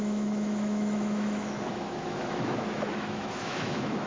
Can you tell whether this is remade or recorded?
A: remade